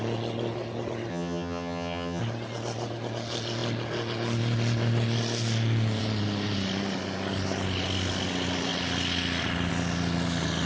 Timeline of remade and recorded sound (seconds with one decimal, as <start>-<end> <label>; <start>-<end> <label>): 0.0-1.1 recorded; 1.1-2.2 remade; 2.2-10.7 recorded